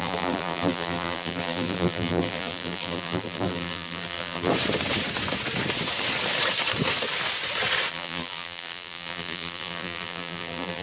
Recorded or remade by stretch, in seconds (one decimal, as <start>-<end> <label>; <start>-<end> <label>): 0.0-4.5 remade; 4.5-7.9 recorded; 7.9-10.8 remade